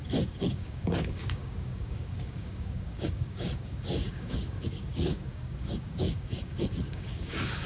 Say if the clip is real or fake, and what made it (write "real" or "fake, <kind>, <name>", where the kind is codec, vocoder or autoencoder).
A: fake, codec, DAC